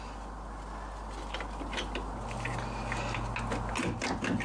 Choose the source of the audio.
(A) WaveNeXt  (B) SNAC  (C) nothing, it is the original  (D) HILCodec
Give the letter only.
C